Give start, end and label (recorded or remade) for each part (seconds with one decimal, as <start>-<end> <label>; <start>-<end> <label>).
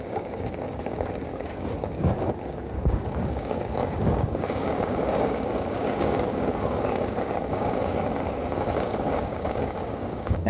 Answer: 0.0-10.5 remade